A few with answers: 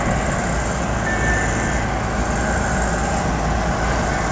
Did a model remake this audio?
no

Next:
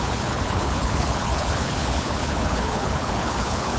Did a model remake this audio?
yes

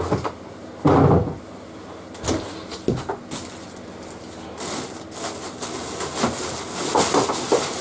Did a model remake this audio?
no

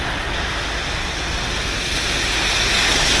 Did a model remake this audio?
no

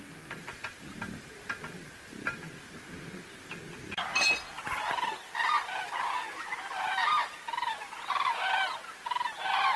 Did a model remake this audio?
no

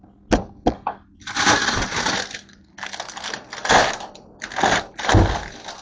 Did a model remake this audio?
no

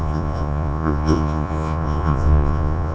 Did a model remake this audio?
yes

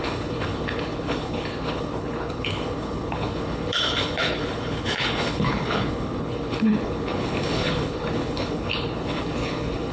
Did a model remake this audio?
yes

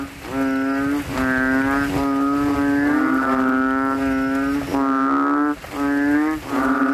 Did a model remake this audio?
no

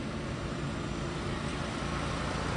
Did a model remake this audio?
yes